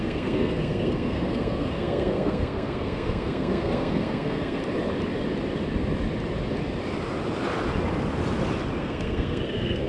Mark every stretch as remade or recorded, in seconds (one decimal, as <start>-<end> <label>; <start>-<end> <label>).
0.0-4.6 remade; 4.6-8.8 recorded; 8.8-9.9 remade